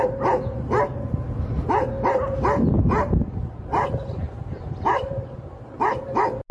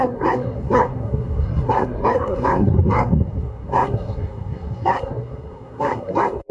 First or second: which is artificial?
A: second